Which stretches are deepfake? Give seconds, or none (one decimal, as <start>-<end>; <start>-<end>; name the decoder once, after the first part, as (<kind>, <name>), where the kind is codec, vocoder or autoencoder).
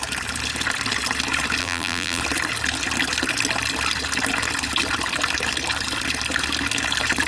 1.6-2.2 (vocoder, BigVGAN v2)